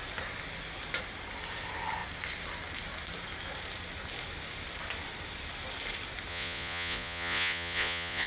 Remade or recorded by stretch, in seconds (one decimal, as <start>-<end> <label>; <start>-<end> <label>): 0.0-6.3 recorded; 6.3-8.3 remade